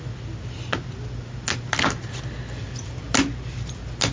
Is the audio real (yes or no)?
yes